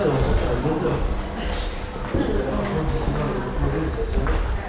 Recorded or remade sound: recorded